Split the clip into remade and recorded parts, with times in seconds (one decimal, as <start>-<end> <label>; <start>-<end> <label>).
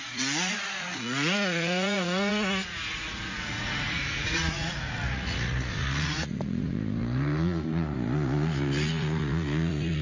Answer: 0.0-10.0 remade